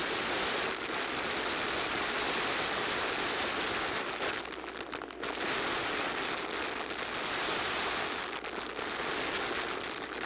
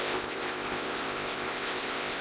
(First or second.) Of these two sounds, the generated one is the second